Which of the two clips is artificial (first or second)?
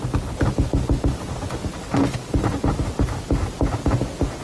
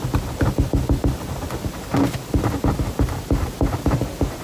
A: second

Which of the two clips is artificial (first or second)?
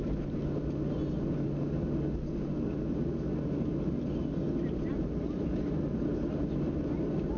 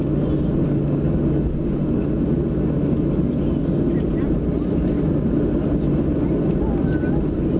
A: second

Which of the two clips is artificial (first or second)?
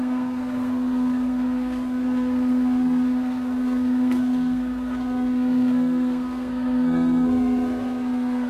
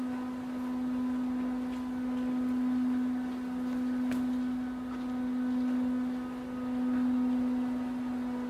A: first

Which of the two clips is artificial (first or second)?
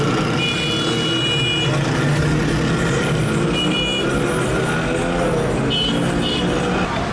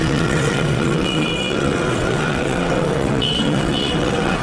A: second